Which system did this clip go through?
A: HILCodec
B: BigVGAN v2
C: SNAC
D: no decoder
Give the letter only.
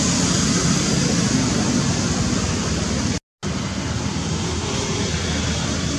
D